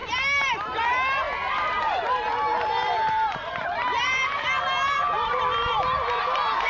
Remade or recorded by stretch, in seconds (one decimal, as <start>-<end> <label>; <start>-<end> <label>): 0.0-6.7 remade